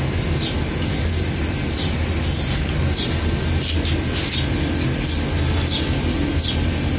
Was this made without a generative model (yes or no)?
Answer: yes